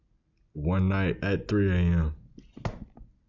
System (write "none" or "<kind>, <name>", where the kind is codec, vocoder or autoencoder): none